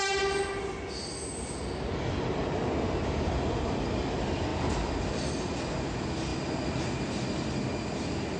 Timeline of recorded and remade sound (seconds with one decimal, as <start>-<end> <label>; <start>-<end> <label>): 0.0-4.5 recorded; 4.5-5.3 remade; 5.3-6.3 recorded; 6.3-7.1 remade; 7.1-8.4 recorded